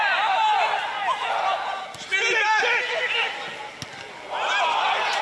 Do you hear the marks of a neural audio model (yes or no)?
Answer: no